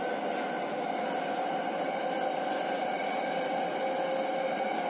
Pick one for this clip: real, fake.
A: real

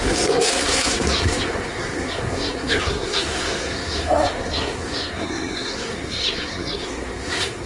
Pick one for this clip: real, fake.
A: fake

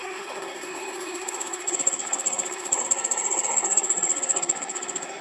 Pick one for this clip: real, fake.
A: fake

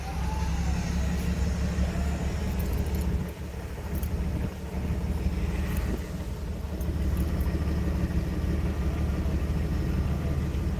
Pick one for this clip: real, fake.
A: real